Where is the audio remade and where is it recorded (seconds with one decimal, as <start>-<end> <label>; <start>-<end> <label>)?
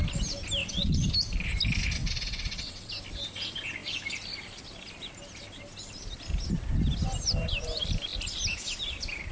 0.0-0.6 recorded; 0.6-1.1 remade; 1.1-2.0 recorded; 2.0-2.9 remade; 2.9-9.3 recorded